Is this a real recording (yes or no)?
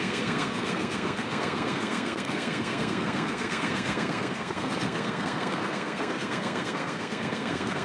no